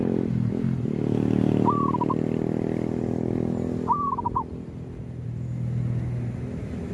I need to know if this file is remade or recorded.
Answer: recorded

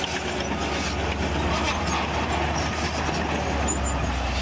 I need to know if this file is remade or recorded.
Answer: recorded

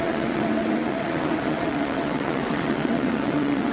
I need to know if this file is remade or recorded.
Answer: remade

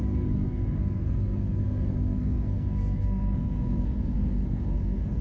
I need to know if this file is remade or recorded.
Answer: remade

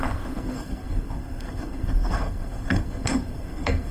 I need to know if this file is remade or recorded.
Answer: remade